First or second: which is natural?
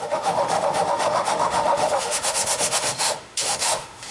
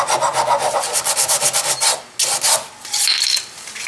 second